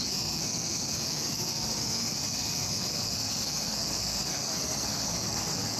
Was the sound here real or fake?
fake